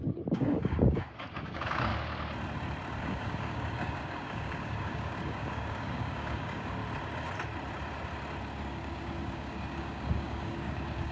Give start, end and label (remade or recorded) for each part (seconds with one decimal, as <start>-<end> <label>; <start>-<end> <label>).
0.0-1.9 remade; 1.9-3.0 recorded; 3.0-6.8 remade; 6.8-8.6 recorded; 8.6-11.1 remade